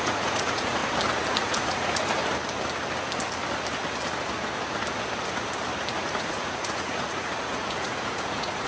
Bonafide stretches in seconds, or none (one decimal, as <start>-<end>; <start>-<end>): 0.8-1.3; 2.2-5.9

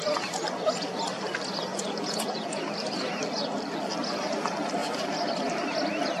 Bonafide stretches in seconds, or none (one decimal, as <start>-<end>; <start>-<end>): 0.0-1.7; 2.6-6.2

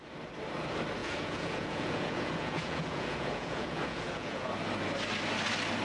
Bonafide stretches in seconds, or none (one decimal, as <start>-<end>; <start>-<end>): 0.0-1.0; 4.5-5.8